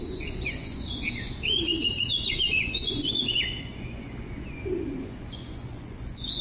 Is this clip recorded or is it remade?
remade